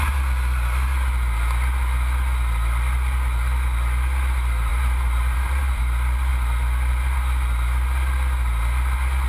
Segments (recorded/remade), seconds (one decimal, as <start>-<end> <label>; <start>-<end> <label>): 0.0-4.7 recorded; 4.7-5.8 remade; 5.8-9.3 recorded